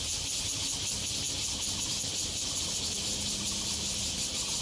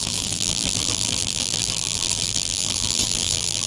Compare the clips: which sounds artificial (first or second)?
second